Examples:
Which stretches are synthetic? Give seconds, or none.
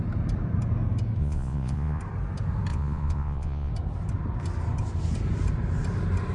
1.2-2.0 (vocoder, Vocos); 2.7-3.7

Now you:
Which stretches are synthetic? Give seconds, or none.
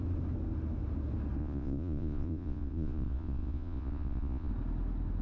1.4-4.5 (vocoder, Vocos)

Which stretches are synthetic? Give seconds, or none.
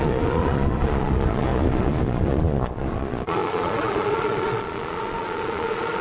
0.0-6.0 (vocoder, Vocos)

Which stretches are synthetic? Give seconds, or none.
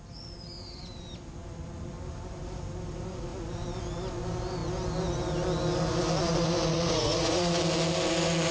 6.7-7.6 (vocoder, Vocos)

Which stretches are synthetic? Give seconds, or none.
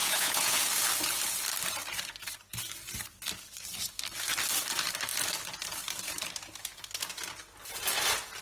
0.0-0.6 (vocoder, Vocos)